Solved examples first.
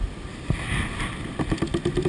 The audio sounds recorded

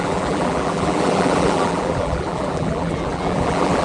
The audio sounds remade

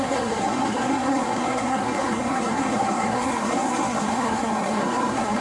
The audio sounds remade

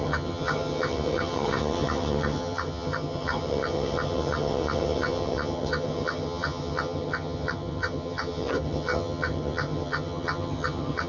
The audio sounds remade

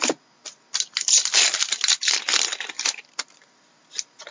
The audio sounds recorded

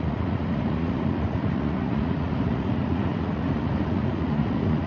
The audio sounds remade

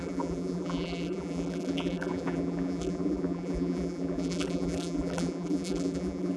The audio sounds remade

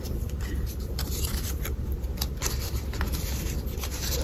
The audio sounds remade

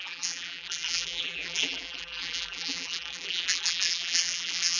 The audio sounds remade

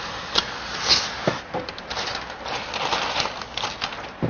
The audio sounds recorded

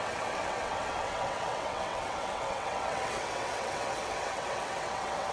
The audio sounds remade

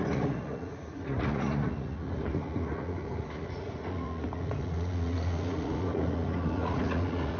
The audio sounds remade